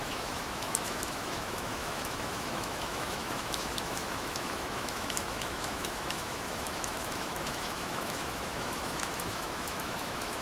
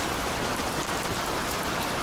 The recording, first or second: second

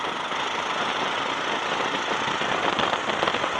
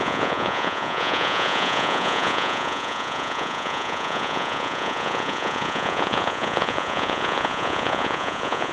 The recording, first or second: first